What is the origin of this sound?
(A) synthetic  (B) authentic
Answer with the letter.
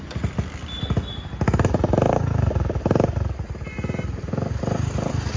B